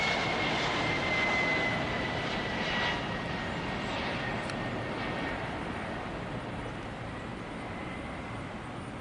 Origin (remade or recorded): recorded